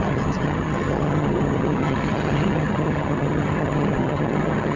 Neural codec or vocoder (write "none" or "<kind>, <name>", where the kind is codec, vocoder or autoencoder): vocoder, HiFi-GAN